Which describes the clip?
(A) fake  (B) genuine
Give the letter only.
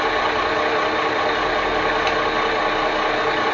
B